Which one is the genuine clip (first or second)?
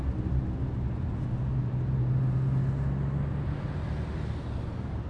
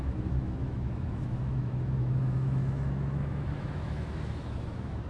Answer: first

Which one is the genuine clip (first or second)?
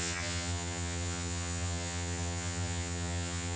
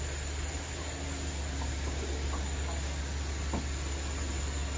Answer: second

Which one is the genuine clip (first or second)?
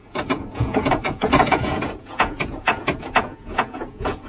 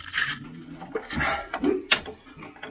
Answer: second